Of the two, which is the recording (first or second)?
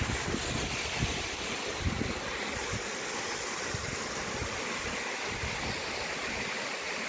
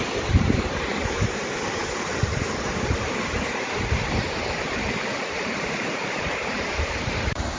first